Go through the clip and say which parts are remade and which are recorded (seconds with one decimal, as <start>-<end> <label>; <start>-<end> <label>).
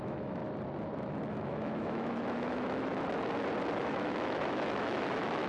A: 0.0-0.4 remade; 0.4-1.3 recorded; 1.3-2.9 remade; 2.9-3.8 recorded; 3.8-5.5 remade